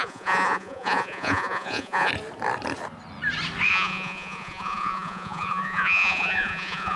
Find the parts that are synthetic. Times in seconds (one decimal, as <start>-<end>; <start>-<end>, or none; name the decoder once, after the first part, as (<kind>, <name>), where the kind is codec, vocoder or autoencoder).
0.0-2.1 (vocoder, Vocos); 3.7-7.0